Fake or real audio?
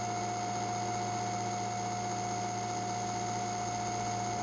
real